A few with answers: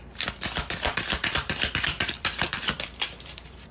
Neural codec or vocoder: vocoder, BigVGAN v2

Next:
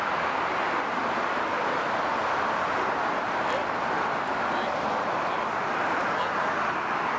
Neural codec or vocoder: none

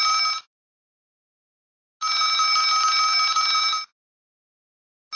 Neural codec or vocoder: none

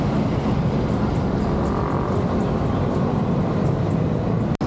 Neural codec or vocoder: none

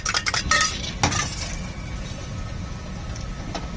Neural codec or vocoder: none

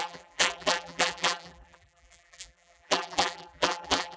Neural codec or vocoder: vocoder, BigVGAN v2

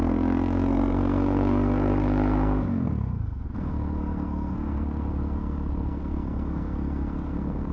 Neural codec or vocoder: codec, SNAC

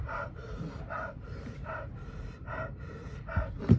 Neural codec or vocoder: vocoder, BigVGAN v2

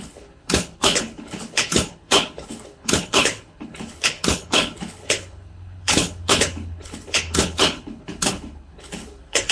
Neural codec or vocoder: codec, HILCodec